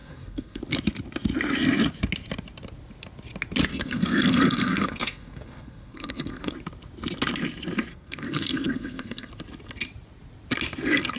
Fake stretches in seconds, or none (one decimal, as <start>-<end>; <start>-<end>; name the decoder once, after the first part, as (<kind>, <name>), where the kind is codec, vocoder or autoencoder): 0.0-0.6 (codec, SNAC); 3.7-6.5; 7.9-9.3